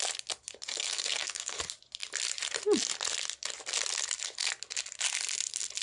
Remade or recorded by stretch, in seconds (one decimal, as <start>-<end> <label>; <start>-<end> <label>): 0.0-0.7 recorded; 0.7-1.6 remade; 1.6-5.8 recorded